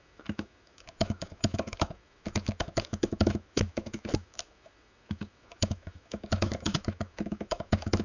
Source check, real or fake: fake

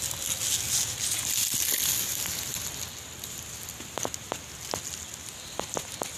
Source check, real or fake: real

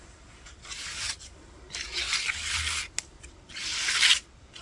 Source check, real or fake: real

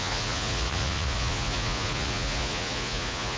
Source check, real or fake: fake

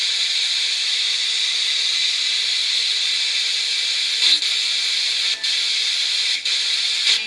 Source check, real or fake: fake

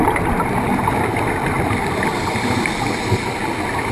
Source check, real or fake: real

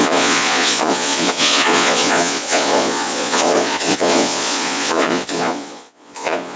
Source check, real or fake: fake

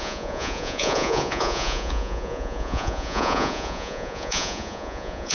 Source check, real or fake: fake